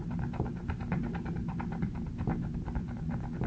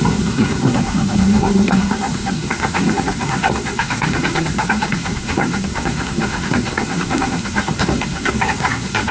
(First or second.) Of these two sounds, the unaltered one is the first